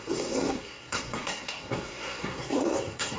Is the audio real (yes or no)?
no